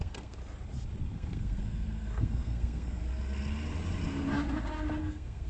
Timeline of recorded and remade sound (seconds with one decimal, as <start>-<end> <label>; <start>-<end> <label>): 0.0-0.4 remade; 0.4-1.0 recorded; 1.0-3.0 remade; 3.0-5.0 recorded; 5.0-5.5 remade